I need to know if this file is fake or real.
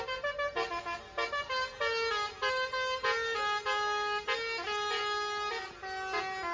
real